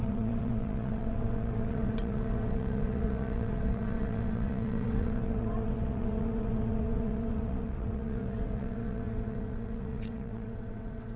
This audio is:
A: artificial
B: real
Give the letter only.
A